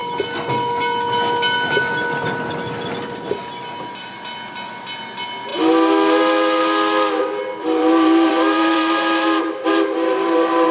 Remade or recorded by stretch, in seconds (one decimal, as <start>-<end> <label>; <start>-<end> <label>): 0.0-7.8 recorded; 7.8-10.7 remade

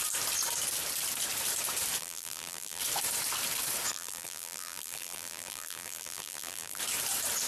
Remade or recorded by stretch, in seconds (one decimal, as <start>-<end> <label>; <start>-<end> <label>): 0.0-2.0 recorded; 2.0-2.8 remade; 2.8-3.9 recorded; 3.9-6.8 remade; 6.8-7.5 recorded

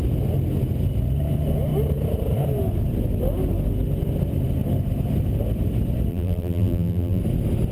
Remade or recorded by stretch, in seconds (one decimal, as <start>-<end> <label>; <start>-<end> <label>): 0.0-6.1 recorded; 6.1-7.2 remade; 7.2-7.7 recorded

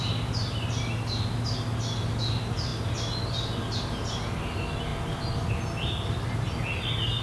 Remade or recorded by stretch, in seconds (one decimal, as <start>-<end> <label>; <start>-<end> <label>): 0.0-7.2 recorded

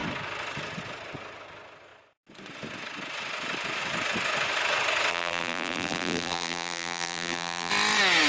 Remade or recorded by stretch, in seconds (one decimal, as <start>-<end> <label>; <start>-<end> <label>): 0.0-5.1 recorded; 5.1-7.7 remade; 7.7-8.3 recorded

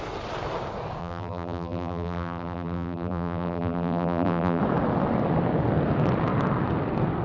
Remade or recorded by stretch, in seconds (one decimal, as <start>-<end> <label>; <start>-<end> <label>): 0.0-1.0 recorded; 1.0-4.6 remade; 4.6-7.2 recorded

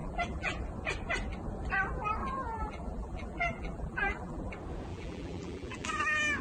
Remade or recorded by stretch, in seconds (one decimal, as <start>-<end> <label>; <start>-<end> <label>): 0.0-0.6 remade; 0.6-2.2 recorded; 2.2-4.5 remade; 4.5-4.9 recorded; 4.9-5.9 remade; 5.9-6.4 recorded

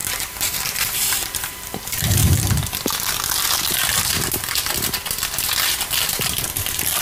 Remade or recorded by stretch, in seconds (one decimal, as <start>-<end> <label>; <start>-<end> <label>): 0.0-2.2 remade; 2.2-6.1 recorded; 6.1-7.0 remade